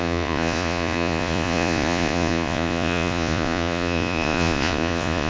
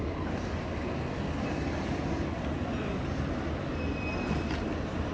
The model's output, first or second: first